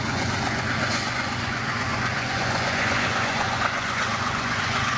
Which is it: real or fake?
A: fake